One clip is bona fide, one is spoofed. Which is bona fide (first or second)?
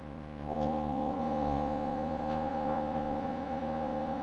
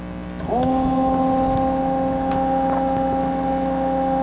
second